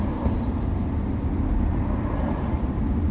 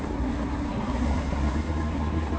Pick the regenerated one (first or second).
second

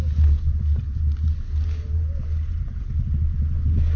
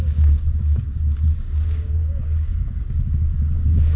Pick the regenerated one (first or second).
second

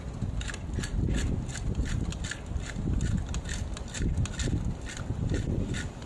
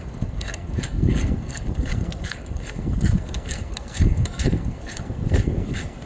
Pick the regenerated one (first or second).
second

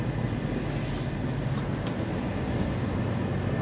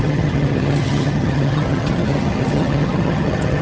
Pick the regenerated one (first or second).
second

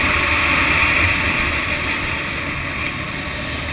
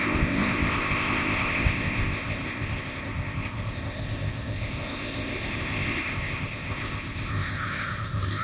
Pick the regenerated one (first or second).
second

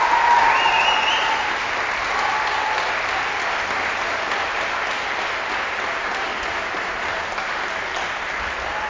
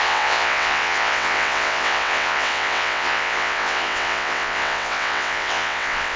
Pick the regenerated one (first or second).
second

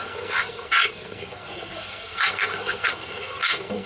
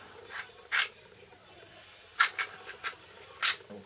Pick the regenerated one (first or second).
first